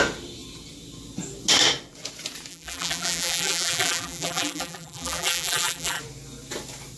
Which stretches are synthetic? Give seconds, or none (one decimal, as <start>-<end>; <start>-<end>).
2.5-6.0